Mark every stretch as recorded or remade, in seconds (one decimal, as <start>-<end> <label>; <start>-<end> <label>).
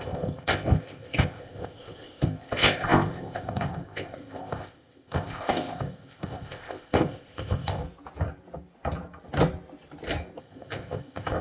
0.0-7.8 remade; 7.8-10.4 recorded; 10.4-11.4 remade